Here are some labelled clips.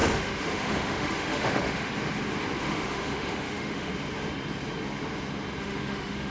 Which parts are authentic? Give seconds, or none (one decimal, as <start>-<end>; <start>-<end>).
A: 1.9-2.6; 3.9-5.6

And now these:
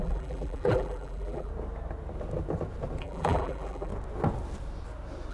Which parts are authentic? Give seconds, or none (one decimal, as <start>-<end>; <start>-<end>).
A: 1.5-3.0; 3.9-5.3

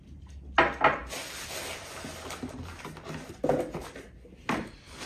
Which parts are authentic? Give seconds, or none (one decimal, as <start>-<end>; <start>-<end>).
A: 0.0-5.1

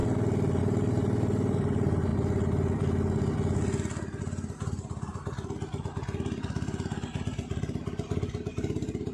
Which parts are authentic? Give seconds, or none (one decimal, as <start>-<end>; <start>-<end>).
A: 0.0-0.6; 2.1-4.2; 5.1-8.5

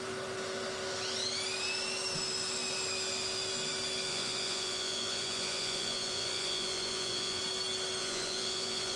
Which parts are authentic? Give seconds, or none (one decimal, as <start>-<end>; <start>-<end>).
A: 0.0-4.1; 7.4-8.0